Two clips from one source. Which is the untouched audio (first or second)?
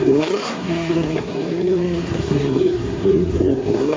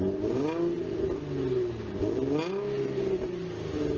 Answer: second